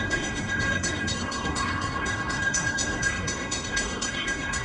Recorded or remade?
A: remade